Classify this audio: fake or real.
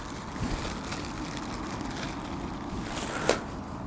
real